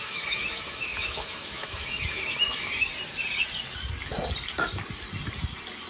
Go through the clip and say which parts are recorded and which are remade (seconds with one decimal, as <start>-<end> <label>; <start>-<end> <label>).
0.0-2.9 remade; 2.9-5.9 recorded